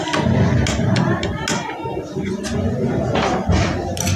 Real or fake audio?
real